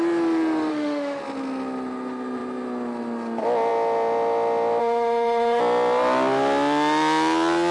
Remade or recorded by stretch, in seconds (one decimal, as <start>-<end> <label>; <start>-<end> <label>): 0.0-0.7 recorded; 0.7-1.2 remade; 1.2-4.8 recorded; 4.8-5.6 remade; 5.6-7.7 recorded